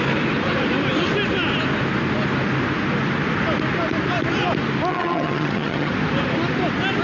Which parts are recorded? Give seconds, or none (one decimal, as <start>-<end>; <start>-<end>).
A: 0.0-4.9; 5.9-7.0